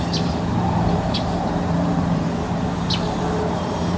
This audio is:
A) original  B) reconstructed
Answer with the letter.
B